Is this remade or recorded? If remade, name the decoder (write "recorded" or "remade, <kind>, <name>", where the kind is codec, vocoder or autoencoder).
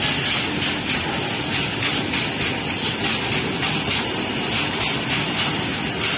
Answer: recorded